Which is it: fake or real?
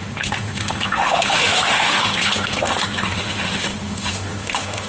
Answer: fake